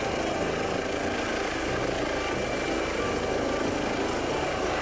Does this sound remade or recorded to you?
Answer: recorded